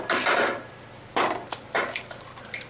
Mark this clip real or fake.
real